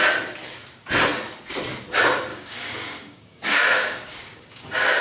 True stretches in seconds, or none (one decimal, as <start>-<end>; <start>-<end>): 0.0-2.3